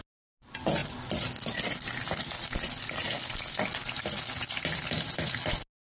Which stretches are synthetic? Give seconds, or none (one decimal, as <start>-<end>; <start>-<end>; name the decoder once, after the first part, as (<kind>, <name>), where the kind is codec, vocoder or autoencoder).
none